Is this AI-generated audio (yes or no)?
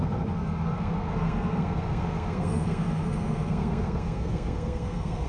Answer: yes